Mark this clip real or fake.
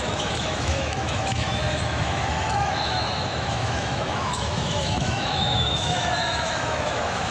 fake